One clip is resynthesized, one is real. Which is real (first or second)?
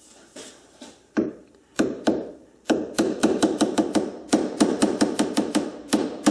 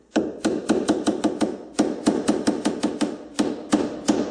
second